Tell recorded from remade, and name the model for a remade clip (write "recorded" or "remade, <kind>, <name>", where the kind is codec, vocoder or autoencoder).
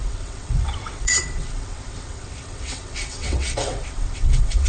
remade, vocoder, WaveNeXt